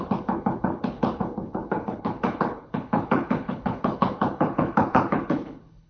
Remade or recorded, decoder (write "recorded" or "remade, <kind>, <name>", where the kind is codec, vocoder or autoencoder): remade, codec, HILCodec